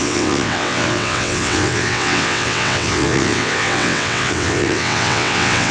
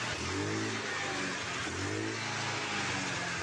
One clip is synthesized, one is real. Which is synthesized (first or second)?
first